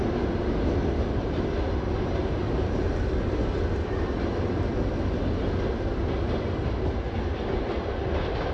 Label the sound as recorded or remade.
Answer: recorded